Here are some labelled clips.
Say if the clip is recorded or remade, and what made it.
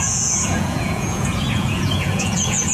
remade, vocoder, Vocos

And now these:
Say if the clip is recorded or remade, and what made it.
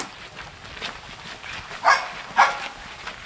recorded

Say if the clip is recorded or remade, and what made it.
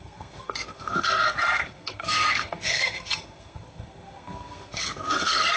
remade, codec, SNAC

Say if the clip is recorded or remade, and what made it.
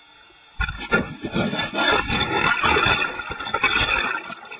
recorded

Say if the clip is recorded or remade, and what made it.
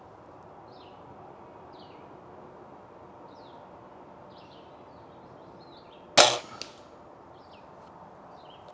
recorded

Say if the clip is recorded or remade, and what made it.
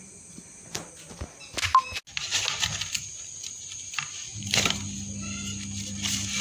recorded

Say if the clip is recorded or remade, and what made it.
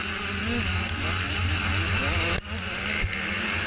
recorded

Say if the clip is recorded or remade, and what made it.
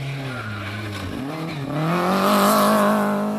recorded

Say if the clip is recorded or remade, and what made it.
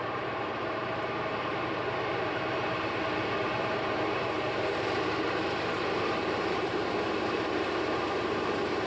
remade, vocoder, BigVGAN v2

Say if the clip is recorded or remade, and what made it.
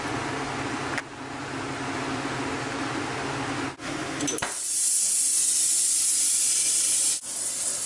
recorded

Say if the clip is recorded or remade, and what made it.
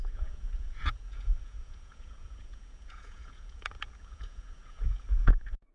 remade, vocoder, Vocos